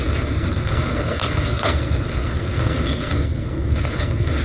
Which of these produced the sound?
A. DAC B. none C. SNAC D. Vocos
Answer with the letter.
C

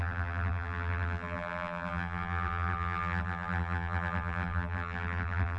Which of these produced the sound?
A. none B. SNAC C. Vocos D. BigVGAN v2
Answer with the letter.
D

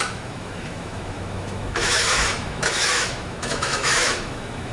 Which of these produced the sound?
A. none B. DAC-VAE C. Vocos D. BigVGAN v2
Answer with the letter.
B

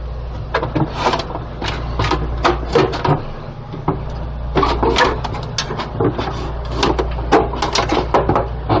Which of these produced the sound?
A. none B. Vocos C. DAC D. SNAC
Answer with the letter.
A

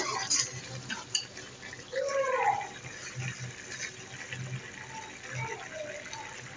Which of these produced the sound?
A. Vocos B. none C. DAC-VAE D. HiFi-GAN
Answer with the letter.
B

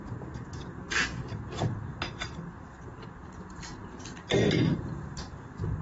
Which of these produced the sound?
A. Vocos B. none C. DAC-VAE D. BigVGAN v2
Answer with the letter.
B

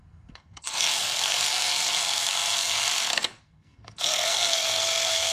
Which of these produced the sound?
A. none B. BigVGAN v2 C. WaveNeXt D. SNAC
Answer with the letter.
D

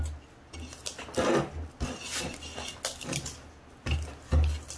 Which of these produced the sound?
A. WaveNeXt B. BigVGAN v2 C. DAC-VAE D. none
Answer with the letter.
D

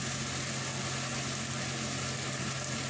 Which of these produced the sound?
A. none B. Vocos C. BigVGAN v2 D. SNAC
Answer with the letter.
A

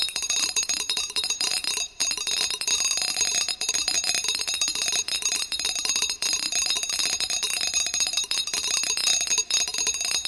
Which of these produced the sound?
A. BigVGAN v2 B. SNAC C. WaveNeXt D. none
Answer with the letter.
A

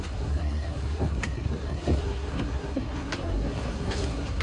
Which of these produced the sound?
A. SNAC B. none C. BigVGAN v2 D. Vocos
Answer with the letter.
A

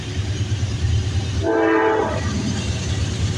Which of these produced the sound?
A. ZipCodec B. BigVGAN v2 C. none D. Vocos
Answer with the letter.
B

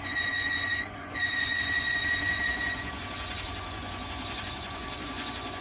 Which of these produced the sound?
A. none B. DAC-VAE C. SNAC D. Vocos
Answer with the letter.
D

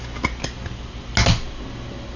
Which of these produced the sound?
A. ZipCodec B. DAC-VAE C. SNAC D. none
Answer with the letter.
D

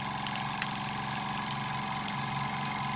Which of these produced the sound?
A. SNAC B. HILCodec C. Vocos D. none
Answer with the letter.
D